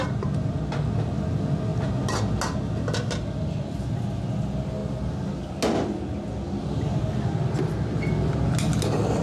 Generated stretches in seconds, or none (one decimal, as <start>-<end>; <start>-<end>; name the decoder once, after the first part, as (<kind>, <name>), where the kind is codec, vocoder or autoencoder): none